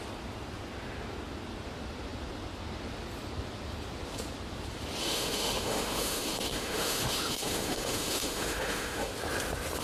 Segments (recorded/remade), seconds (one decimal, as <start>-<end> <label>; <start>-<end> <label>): 0.0-5.0 recorded; 5.0-9.1 remade; 9.1-9.8 recorded